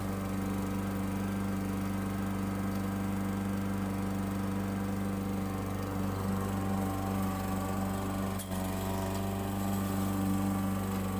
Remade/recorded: recorded